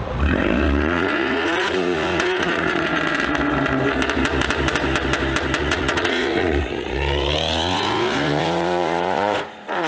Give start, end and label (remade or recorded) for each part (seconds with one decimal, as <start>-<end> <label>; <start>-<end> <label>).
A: 0.0-2.9 remade; 2.9-5.6 recorded; 5.6-9.9 remade